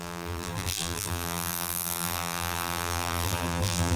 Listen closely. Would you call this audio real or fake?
fake